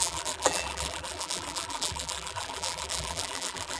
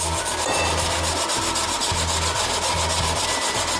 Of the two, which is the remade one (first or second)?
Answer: first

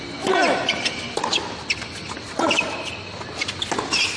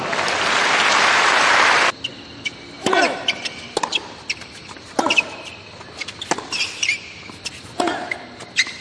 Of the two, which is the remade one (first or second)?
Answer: second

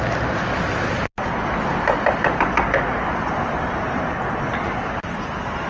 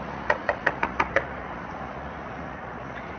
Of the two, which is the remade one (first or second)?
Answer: second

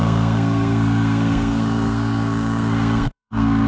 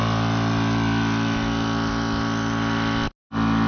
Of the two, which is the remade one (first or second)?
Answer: first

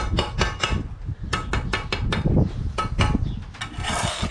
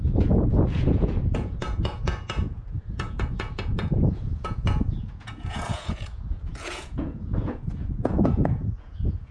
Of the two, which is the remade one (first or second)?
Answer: second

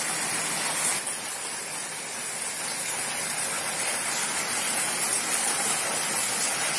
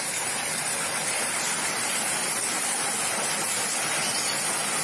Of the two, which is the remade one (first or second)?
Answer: second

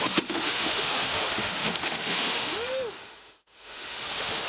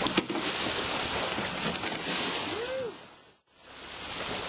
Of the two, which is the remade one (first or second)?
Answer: first